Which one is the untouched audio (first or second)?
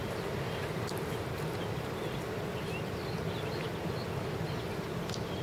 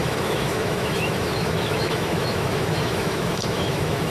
first